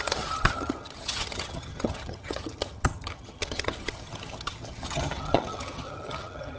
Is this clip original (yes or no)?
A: no